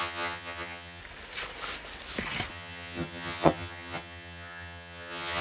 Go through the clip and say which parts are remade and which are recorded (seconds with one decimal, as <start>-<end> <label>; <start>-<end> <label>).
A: 0.0-1.0 remade; 1.0-2.5 recorded; 2.5-5.4 remade